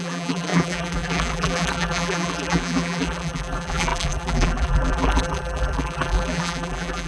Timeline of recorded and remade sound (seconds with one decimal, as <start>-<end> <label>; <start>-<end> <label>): 0.0-7.1 remade